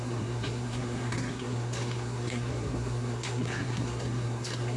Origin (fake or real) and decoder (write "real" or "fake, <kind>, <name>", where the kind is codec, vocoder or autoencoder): fake, codec, SNAC